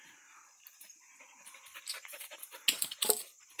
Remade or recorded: recorded